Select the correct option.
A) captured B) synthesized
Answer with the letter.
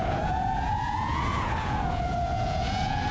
B